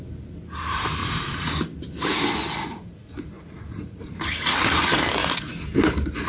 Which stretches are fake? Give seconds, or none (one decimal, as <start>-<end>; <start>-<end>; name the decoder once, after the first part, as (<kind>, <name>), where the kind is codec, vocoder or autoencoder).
1.0-1.5 (vocoder, Vocos); 2.6-4.1